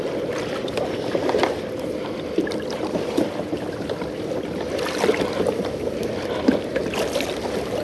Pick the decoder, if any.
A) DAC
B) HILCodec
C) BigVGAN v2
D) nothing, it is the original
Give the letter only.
C